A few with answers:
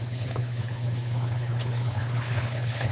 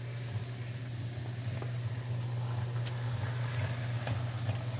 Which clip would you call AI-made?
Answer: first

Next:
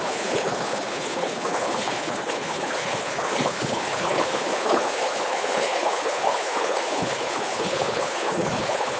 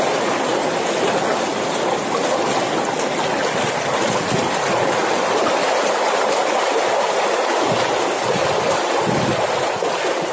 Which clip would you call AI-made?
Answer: first